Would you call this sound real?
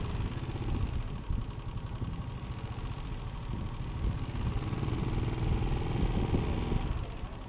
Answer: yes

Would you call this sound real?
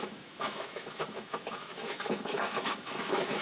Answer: no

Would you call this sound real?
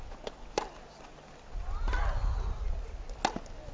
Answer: yes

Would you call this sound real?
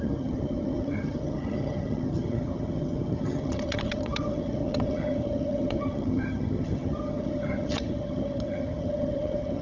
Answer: no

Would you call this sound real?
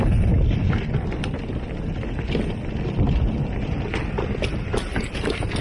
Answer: yes